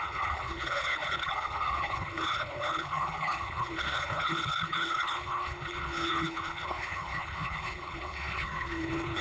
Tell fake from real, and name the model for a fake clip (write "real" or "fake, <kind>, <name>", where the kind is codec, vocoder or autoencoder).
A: fake, codec, HILCodec